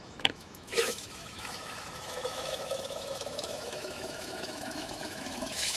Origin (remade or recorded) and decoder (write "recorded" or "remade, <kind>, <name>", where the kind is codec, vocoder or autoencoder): remade, autoencoder, DAC-VAE